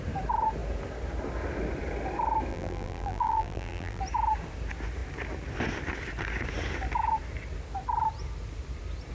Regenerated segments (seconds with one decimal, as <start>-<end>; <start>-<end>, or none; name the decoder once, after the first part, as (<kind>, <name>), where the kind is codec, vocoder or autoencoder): 2.5-4.0 (vocoder, BigVGAN v2)